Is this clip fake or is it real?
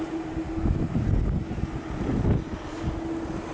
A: real